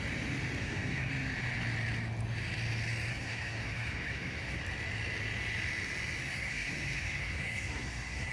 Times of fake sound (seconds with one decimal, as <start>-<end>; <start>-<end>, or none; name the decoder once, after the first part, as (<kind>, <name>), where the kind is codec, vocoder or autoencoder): 0.6-1.1 (codec, SNAC); 3.1-4.6; 6.2-8.3

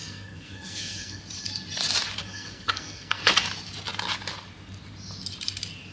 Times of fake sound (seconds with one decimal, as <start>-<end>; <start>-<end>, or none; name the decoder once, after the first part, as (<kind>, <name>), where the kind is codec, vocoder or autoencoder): 0.0-1.2 (codec, SNAC); 2.2-3.2

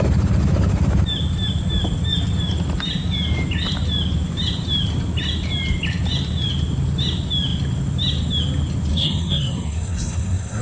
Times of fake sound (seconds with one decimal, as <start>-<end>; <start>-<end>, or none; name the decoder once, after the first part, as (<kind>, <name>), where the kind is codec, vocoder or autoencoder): 8.9-10.6 (codec, SNAC)